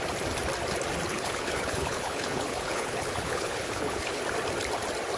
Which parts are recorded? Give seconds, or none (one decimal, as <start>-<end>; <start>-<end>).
0.0-1.1; 4.2-5.2